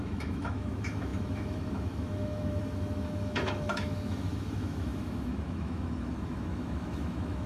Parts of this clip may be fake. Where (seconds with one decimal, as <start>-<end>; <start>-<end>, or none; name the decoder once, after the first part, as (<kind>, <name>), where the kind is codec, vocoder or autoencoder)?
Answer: 0.0-7.5 (autoencoder, DAC-VAE)